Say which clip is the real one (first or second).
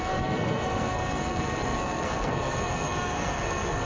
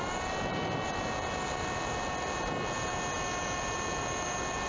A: second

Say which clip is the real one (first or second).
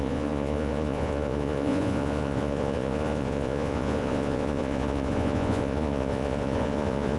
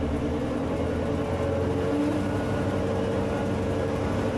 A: second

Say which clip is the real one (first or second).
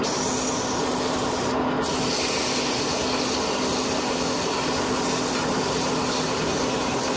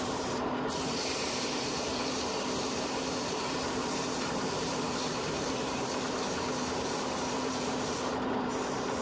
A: first